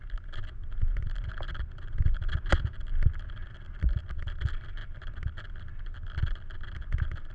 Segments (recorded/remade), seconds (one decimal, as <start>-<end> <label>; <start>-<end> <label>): 0.0-7.3 recorded